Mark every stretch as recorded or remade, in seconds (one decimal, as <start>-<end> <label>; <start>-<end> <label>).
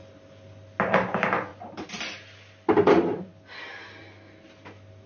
0.0-5.1 recorded